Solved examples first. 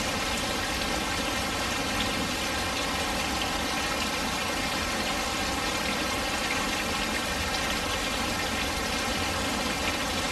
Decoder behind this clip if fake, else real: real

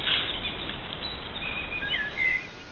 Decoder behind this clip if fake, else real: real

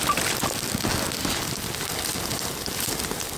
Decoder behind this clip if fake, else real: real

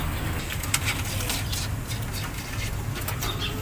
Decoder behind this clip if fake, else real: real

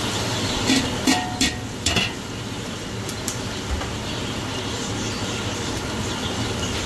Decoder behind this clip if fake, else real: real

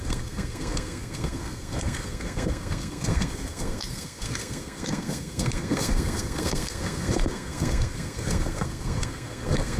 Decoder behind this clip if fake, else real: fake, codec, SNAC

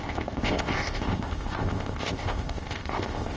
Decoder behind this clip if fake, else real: fake, codec, ZipCodec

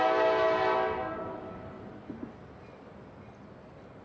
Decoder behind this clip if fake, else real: real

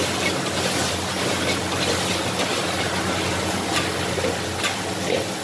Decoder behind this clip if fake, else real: real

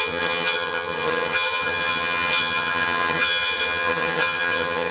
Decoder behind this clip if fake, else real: fake, vocoder, HiFi-GAN